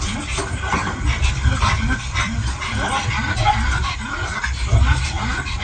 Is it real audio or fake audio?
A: real